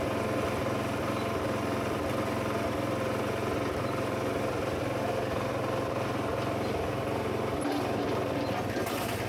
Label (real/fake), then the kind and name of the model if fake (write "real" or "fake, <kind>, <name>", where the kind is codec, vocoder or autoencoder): real